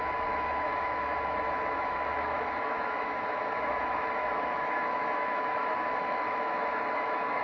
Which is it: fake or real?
fake